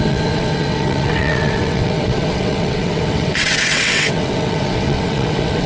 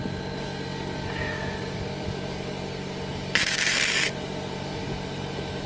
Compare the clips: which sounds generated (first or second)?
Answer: first